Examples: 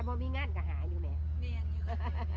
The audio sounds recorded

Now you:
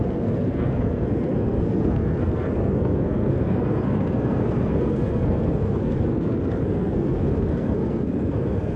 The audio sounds remade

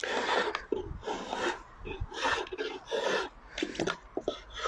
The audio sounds recorded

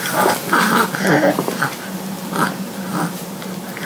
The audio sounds recorded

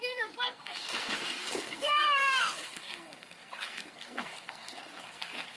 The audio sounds remade